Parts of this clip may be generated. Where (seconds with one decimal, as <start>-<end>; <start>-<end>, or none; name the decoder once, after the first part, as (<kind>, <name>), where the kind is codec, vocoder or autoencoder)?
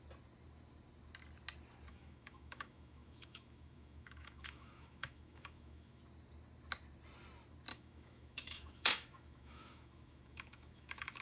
1.9-6.0 (autoencoder, DAC-VAE); 7.7-11.2